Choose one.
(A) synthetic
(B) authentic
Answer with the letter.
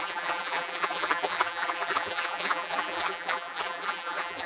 A